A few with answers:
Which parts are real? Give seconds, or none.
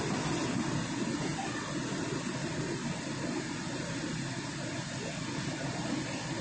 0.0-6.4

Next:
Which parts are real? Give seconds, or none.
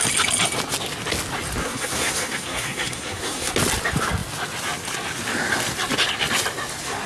0.0-1.6; 3.5-7.1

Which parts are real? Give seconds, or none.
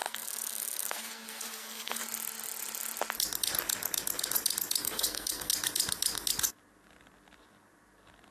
2.0-4.8; 5.5-8.3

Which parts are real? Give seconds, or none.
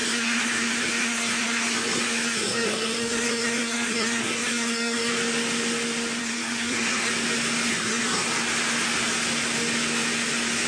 5.1-6.2; 7.1-7.7; 8.3-10.7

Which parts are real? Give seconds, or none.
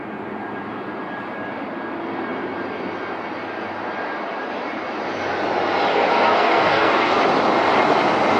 0.0-5.9; 7.2-8.4